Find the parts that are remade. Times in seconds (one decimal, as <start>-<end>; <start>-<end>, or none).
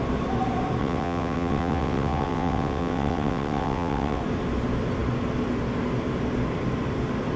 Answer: 0.8-4.2